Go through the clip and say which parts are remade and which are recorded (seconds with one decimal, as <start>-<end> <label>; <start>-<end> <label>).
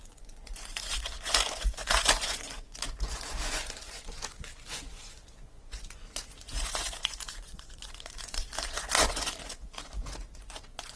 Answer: 0.0-11.0 remade